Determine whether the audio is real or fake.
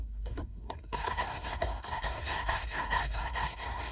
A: fake